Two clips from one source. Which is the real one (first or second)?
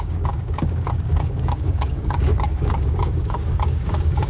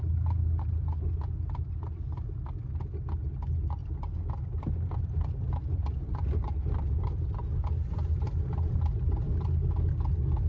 second